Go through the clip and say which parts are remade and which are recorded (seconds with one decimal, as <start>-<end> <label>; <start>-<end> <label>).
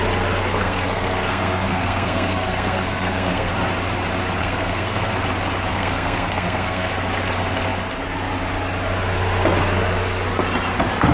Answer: 0.0-0.4 recorded; 0.4-3.5 remade; 3.5-4.4 recorded; 4.4-5.1 remade; 5.1-5.7 recorded; 5.7-6.9 remade; 6.9-11.1 recorded